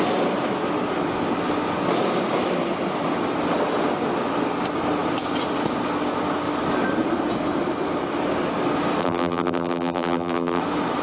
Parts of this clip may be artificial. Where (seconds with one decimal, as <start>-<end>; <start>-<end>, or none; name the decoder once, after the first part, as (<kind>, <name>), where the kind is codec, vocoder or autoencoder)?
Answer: 9.0-10.6 (vocoder, BigVGAN v2)